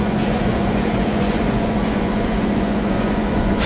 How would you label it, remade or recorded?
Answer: remade